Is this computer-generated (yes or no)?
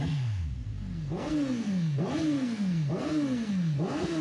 yes